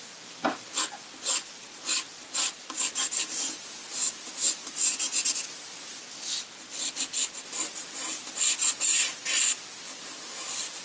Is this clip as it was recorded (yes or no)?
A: yes